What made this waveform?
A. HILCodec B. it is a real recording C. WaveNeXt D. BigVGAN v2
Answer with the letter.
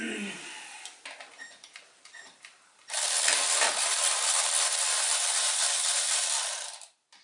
D